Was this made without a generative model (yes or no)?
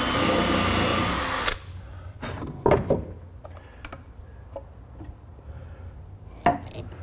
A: yes